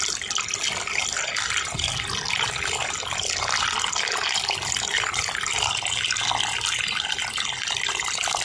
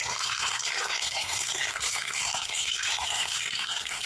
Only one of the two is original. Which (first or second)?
first